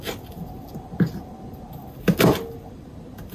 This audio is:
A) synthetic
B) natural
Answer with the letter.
B